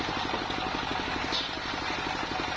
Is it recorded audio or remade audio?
recorded